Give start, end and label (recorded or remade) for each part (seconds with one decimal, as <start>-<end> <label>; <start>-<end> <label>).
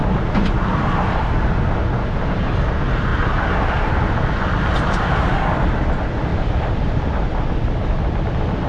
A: 0.0-6.3 recorded; 6.3-7.5 remade; 7.5-8.7 recorded